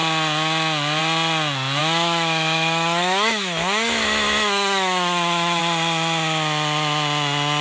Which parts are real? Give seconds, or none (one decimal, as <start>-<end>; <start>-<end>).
0.0-1.8; 5.6-7.6